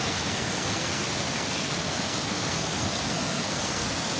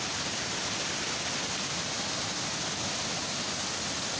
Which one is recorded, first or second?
second